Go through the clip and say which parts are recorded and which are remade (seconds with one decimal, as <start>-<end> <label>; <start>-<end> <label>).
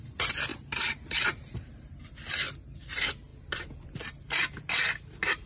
0.0-0.5 recorded; 0.5-2.0 remade; 2.0-5.5 recorded